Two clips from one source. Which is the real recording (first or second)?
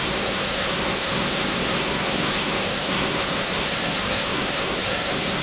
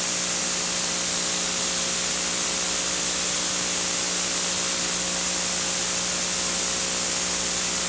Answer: second